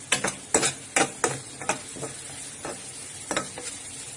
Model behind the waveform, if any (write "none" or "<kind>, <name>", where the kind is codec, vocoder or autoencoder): none